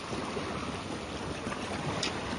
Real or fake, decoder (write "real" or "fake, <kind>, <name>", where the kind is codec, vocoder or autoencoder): real